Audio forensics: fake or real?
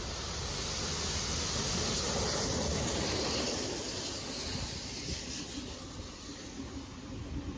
real